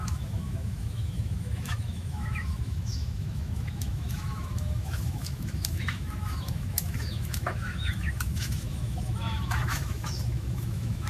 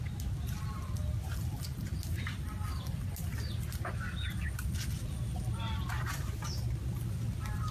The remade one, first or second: first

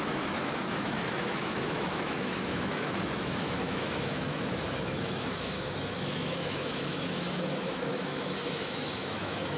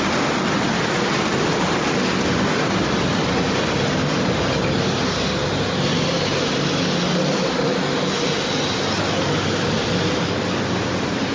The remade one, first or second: first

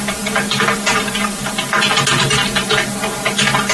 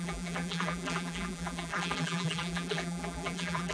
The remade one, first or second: second